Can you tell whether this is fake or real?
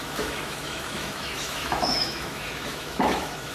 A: fake